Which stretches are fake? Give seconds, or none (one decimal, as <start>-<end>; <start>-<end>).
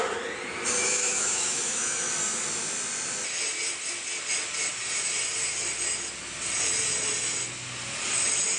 0.8-2.1